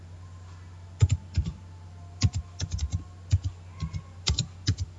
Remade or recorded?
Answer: recorded